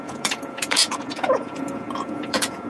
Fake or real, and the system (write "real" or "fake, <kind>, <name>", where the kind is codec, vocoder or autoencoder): fake, vocoder, Vocos